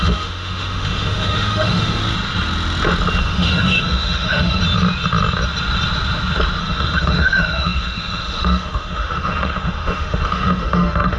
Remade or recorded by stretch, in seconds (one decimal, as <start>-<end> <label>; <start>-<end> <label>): 0.0-2.0 remade; 2.0-3.2 recorded; 3.2-4.6 remade; 4.6-6.6 recorded; 6.6-11.2 remade